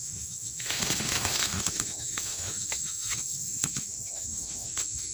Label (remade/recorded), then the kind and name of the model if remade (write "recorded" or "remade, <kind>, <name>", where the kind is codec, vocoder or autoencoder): remade, autoencoder, DAC-VAE